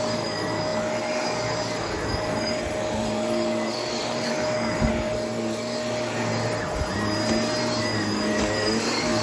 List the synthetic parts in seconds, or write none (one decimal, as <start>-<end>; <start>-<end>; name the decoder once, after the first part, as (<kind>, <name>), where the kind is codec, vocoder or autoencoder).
0.0-6.3 (codec, DAC); 7.8-9.2